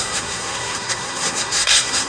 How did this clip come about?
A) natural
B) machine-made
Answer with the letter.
B